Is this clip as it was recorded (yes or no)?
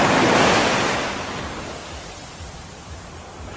yes